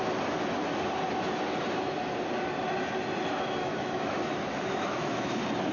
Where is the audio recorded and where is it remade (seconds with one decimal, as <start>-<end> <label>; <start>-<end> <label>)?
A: 0.0-3.6 recorded; 3.6-5.3 remade; 5.3-5.7 recorded